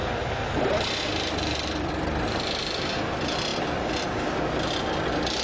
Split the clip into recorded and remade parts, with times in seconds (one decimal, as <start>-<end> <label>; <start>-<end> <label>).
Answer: 0.0-1.9 remade; 1.9-5.4 recorded